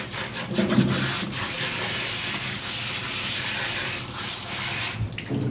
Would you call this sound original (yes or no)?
yes